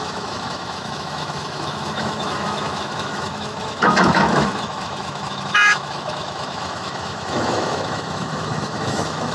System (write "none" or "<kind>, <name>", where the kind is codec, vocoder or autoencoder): autoencoder, DAC-VAE